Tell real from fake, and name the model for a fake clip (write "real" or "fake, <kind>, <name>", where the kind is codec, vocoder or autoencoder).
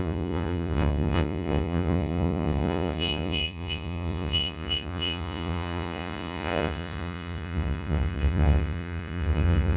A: fake, vocoder, Vocos